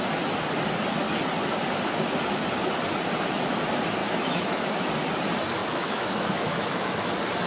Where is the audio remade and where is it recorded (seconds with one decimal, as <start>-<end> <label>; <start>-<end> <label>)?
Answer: 0.0-4.0 recorded; 4.0-4.9 remade; 4.9-5.6 recorded; 5.6-7.1 remade; 7.1-7.5 recorded

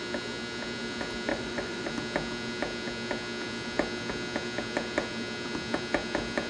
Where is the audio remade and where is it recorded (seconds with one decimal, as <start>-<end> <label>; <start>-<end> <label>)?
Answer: 0.0-1.3 recorded; 1.3-1.9 remade; 1.9-6.5 recorded

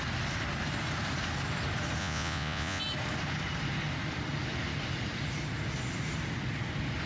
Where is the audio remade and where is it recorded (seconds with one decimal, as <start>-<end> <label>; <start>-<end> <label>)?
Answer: 0.0-2.0 recorded; 2.0-2.8 remade; 2.8-7.1 recorded

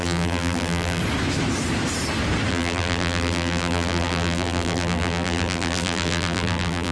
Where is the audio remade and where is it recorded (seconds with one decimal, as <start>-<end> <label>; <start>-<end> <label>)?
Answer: 0.0-1.0 remade; 1.0-2.5 recorded; 2.5-6.9 remade